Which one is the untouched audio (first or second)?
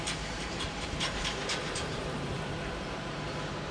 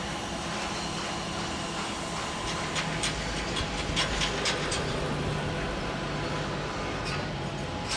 second